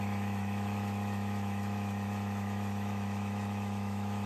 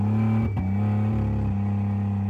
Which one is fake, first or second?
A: first